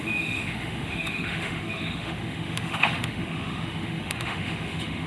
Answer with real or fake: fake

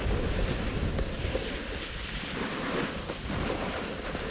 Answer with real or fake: real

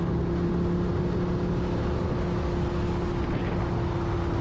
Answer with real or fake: real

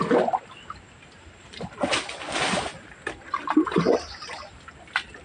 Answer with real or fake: real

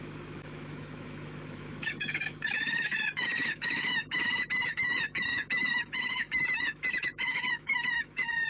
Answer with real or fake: fake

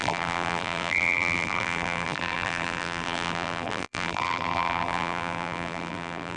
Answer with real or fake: fake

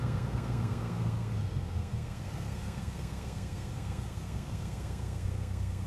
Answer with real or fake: fake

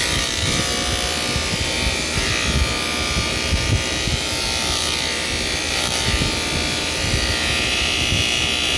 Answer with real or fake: real